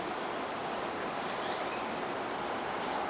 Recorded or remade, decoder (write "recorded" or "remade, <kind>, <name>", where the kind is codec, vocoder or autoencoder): recorded